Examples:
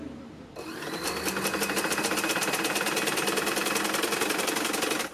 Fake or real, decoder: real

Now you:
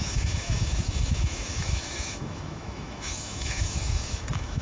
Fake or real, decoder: fake, autoencoder, DAC-VAE